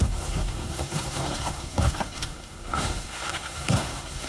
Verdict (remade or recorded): remade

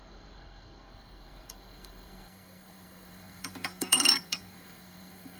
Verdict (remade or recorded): remade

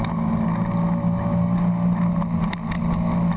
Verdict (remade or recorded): recorded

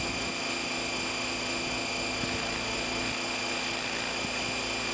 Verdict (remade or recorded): recorded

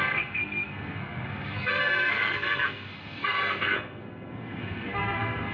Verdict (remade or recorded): remade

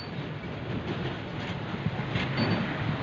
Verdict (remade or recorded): recorded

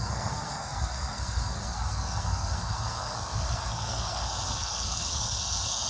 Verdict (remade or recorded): remade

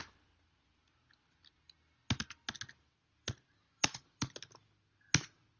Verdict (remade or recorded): recorded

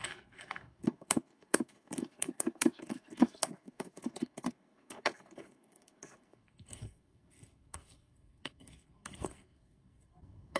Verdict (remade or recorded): remade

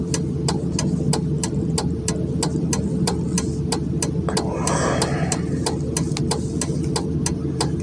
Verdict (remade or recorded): recorded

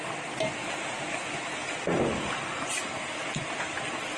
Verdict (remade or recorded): recorded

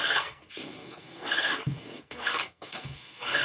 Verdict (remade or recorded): remade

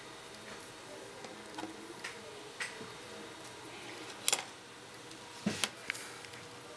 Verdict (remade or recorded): recorded